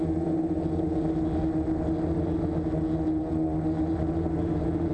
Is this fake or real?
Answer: real